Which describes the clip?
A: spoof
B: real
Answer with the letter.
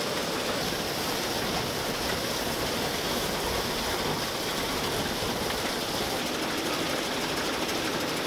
B